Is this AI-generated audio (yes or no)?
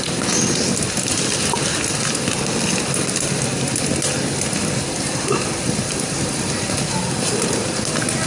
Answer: no